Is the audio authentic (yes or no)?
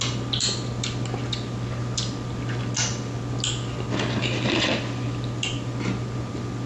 yes